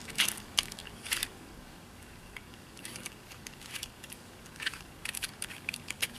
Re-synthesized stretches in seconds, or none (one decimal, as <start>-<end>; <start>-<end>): 0.0-6.2

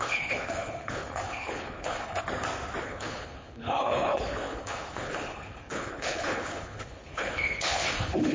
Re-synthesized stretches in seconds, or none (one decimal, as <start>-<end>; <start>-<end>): 0.0-2.2; 2.8-8.3

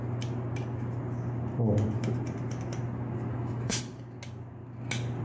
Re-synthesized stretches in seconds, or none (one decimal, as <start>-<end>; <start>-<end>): 3.3-3.8

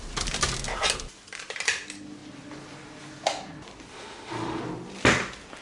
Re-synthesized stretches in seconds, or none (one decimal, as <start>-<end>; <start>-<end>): 3.9-4.6